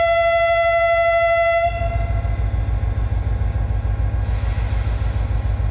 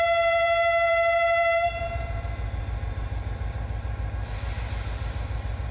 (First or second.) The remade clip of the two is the second